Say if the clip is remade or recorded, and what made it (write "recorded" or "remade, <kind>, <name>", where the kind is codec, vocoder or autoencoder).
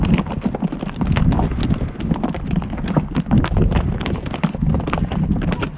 recorded